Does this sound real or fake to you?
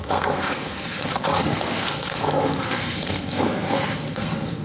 fake